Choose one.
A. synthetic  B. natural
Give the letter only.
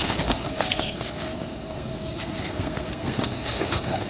A